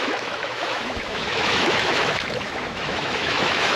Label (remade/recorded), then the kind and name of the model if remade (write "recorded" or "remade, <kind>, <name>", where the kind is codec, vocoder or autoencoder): remade, autoencoder, DAC-VAE